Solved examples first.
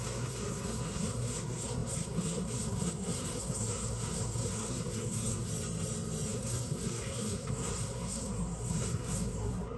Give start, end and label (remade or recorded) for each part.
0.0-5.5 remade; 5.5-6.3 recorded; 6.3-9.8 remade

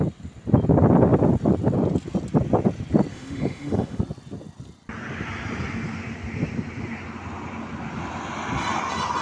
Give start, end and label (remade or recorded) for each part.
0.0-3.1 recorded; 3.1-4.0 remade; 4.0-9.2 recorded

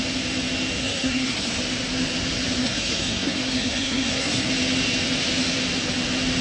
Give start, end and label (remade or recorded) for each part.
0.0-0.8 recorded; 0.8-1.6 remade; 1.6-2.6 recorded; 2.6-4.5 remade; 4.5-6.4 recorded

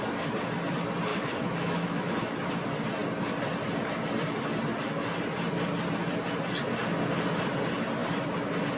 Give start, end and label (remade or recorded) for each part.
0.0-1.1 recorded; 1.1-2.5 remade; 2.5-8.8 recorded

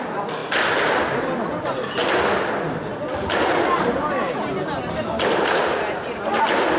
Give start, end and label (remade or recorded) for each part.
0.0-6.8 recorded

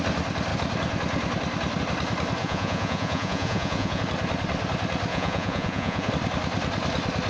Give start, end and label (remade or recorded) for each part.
0.0-2.4 recorded; 2.4-4.0 remade; 4.0-5.1 recorded; 5.1-6.1 remade; 6.1-7.3 recorded